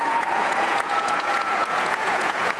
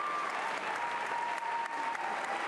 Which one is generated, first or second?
first